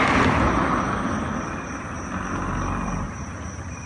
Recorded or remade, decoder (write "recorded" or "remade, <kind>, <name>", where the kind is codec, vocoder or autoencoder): recorded